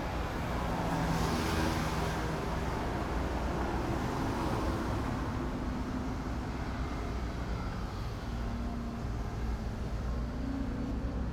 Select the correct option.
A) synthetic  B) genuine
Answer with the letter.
B